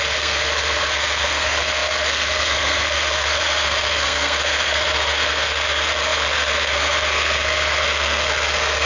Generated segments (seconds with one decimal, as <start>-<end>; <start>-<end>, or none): 0.0-8.9